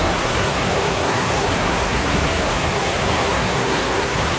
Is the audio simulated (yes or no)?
yes